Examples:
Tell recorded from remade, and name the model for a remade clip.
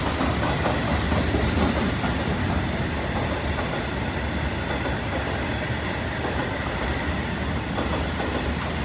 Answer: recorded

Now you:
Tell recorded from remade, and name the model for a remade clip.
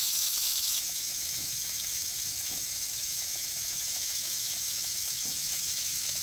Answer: remade, autoencoder, DAC-VAE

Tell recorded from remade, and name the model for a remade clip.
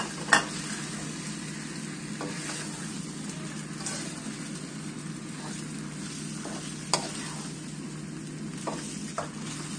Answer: recorded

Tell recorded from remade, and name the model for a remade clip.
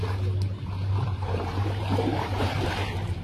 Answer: recorded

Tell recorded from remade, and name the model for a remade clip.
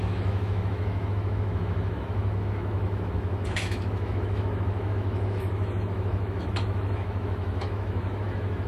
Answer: remade, autoencoder, DAC-VAE